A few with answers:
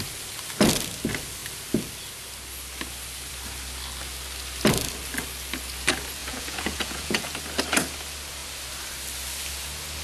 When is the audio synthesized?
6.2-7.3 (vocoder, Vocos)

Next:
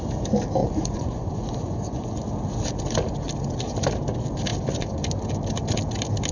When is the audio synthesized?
0.6-2.2 (vocoder, Vocos)

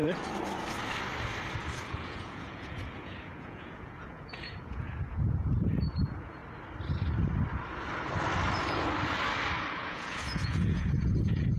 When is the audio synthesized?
1.9-6.4 (vocoder, Vocos); 9.7-11.6

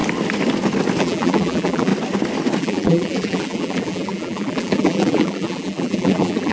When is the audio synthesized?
1.0-1.9 (vocoder, BigVGAN v2); 2.6-6.5

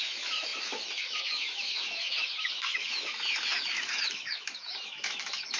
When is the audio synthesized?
0.0-5.6 (autoencoder, DAC-VAE)

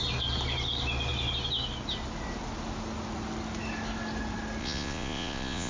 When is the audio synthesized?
4.6-5.7 (vocoder, Vocos)

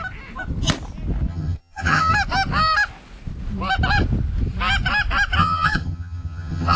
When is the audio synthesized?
1.3-2.1 (vocoder, HiFi-GAN); 5.4-6.8

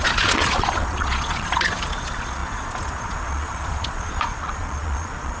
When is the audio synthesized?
0.0-5.4 (vocoder, Vocos)